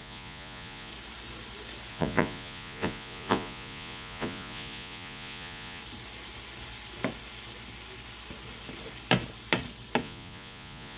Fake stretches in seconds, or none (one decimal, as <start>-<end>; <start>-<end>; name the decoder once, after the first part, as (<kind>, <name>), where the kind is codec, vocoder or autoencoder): 0.0-0.9 (vocoder, Vocos); 1.9-5.8; 10.0-11.0